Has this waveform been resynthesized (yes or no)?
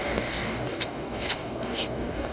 yes